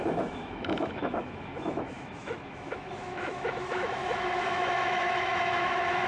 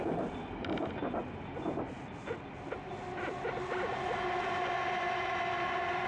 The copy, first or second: first